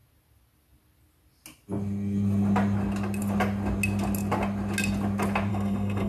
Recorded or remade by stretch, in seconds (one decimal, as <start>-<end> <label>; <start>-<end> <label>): 0.0-5.5 recorded; 5.5-6.1 remade